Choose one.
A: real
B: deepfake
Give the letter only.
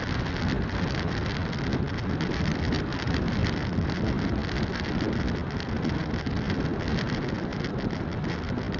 A